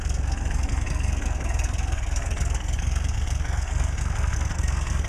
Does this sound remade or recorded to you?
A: remade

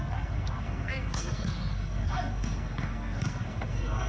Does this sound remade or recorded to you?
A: remade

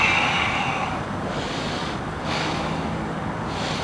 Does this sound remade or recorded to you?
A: remade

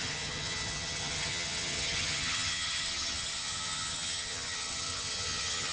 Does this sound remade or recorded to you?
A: remade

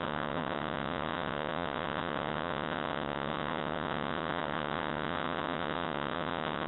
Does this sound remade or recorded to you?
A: remade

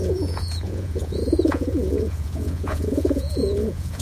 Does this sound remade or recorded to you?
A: remade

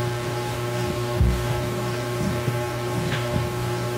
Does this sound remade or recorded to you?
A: remade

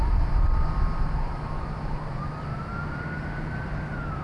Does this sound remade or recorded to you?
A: recorded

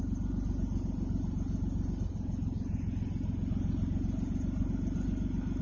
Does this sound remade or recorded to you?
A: recorded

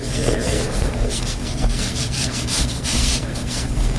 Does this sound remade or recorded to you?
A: remade